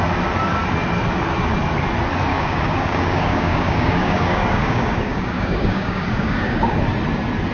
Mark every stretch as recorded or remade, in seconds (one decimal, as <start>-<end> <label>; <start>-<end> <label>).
0.0-2.3 recorded; 2.3-6.8 remade; 6.8-7.5 recorded